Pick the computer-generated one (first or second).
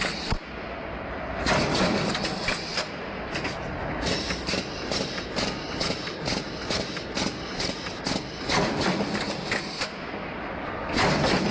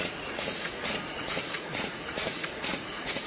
second